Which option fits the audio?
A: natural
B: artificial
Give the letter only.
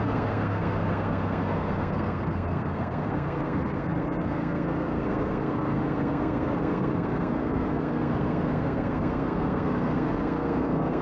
B